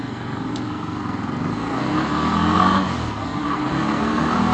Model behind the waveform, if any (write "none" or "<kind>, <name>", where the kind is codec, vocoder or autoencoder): codec, SNAC